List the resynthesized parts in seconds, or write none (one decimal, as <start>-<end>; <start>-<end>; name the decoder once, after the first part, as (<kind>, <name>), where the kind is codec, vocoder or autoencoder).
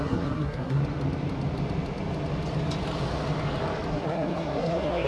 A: 0.0-0.8 (codec, SNAC); 3.9-5.1